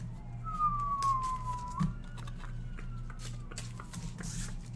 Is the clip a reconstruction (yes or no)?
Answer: no